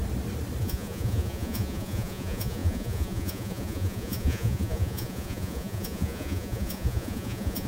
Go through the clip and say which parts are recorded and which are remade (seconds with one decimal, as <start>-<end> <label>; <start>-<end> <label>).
0.0-0.6 recorded; 0.6-7.7 remade